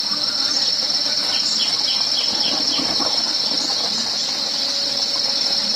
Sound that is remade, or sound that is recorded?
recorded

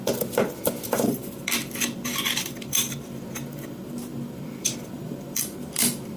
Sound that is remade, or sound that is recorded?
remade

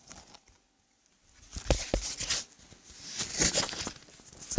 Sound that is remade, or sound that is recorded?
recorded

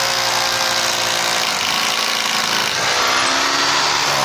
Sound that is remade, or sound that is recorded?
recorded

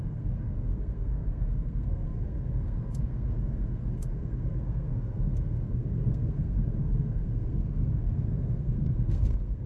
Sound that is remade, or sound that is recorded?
remade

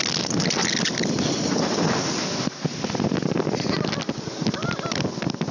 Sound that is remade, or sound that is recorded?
recorded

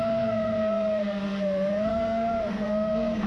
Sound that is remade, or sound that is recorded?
remade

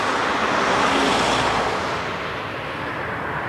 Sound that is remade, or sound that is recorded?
recorded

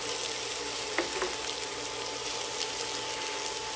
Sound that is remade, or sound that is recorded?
recorded